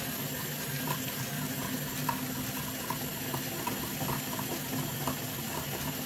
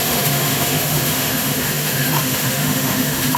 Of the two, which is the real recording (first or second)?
first